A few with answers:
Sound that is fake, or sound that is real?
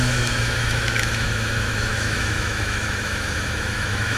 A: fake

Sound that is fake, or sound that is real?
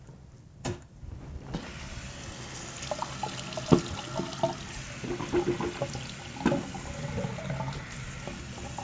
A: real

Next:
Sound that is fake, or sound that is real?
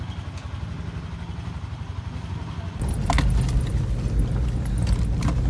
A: real